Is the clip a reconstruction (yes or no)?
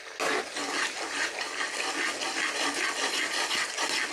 no